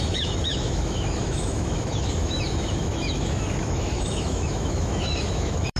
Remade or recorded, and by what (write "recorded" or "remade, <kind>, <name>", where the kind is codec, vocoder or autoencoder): remade, autoencoder, DAC-VAE